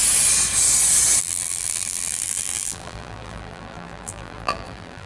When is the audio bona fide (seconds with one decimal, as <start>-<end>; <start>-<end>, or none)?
0.0-1.2